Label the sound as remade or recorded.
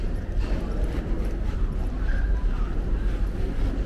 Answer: recorded